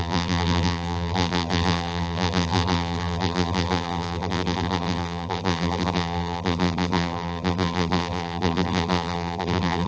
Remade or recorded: remade